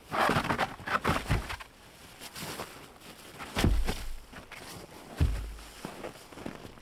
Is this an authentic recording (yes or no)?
yes